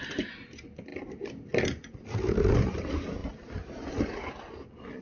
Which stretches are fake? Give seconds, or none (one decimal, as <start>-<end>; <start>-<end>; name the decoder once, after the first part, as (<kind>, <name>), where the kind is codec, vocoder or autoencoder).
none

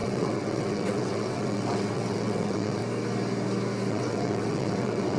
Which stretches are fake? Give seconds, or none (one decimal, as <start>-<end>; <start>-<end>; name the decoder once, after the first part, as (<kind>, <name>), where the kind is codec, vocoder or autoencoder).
0.0-2.8 (vocoder, WaveNeXt); 3.9-5.2

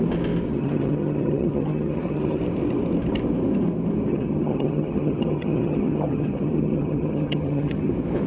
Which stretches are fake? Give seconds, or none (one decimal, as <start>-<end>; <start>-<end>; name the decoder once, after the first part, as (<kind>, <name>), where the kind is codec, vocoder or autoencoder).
0.5-2.4 (vocoder, HiFi-GAN); 4.1-7.9

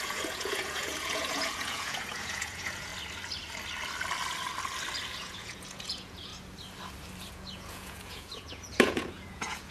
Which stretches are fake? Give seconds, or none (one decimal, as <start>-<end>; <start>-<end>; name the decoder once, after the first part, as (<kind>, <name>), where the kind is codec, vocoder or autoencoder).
0.0-2.9 (vocoder, Vocos); 5.1-6.3; 7.3-9.7

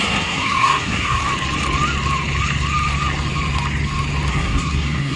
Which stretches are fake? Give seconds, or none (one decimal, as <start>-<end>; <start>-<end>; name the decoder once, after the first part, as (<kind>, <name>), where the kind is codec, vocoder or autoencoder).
0.0-1.2 (codec, SNAC); 4.3-5.2